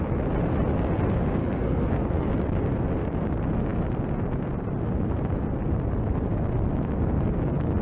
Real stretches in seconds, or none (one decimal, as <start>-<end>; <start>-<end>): 0.0-1.4; 2.3-7.8

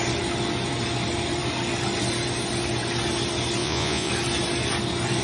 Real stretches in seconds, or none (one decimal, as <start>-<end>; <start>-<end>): 0.0-3.6; 4.1-5.2

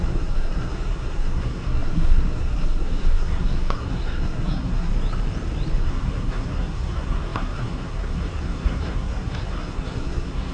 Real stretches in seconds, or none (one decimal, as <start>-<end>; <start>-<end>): 4.9-5.8

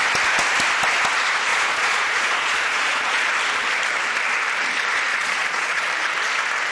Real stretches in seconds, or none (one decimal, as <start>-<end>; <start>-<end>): 0.0-1.5; 3.3-5.1; 5.9-6.7

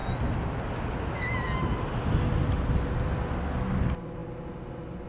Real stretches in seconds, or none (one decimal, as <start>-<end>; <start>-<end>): 0.0-5.1

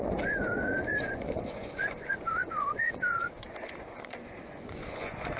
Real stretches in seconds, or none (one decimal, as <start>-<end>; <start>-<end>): none